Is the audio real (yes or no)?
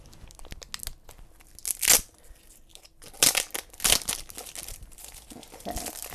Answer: yes